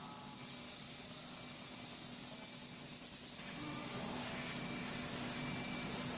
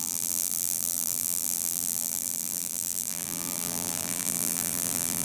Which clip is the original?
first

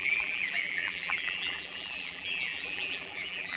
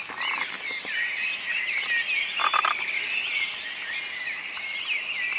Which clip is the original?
second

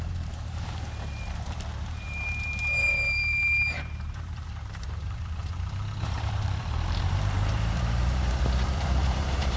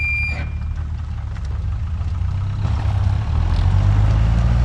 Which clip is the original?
second